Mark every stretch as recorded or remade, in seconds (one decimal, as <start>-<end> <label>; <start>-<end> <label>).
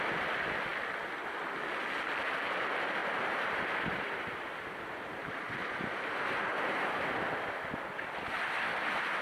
0.0-3.0 recorded; 3.0-7.0 remade; 7.0-9.2 recorded